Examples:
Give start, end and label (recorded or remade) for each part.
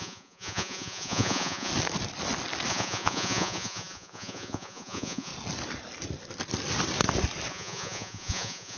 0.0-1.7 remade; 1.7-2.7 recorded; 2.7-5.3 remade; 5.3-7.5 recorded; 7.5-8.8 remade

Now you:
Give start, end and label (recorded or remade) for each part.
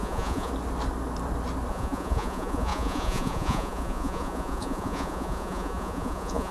0.0-0.5 remade; 0.5-1.7 recorded; 1.7-6.5 remade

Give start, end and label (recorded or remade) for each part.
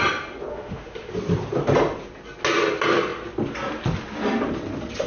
0.0-0.5 recorded; 0.5-1.1 remade; 1.1-5.1 recorded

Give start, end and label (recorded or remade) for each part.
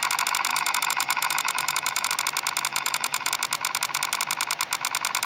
0.0-0.5 recorded; 0.5-2.1 remade; 2.1-2.7 recorded; 2.7-3.3 remade; 3.3-5.3 recorded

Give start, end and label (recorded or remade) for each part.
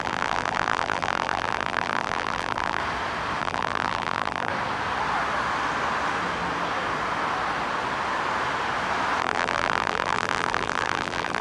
0.0-2.8 remade; 2.8-3.4 recorded; 3.4-4.5 remade; 4.5-9.2 recorded; 9.2-11.4 remade